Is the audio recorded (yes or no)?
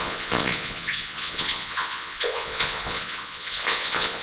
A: no